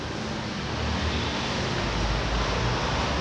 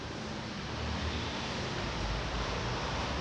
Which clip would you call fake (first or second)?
second